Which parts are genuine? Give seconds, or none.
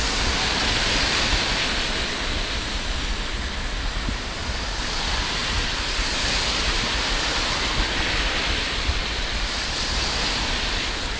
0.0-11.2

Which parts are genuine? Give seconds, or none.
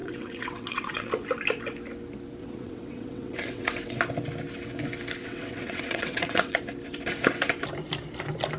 1.1-2.4; 4.0-5.2; 6.6-8.6